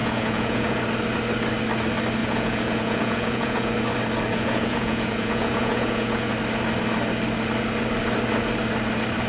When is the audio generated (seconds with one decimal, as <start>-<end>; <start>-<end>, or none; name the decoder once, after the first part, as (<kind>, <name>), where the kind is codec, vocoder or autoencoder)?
0.0-0.8 (vocoder, Vocos); 2.2-3.7; 4.3-6.3